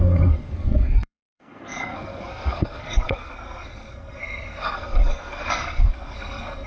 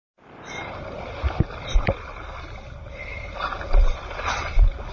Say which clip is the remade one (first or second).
first